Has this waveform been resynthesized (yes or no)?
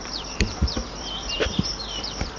yes